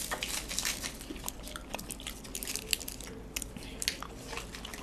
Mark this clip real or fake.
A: real